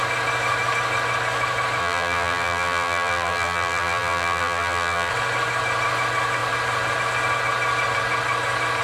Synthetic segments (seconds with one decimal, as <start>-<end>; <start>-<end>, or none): 1.8-5.1